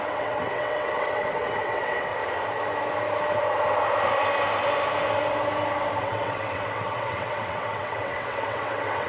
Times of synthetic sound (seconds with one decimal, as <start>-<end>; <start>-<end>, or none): 0.0-2.1; 6.0-9.1